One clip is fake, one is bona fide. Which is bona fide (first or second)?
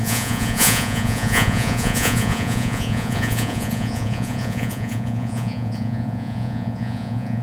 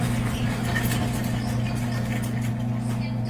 second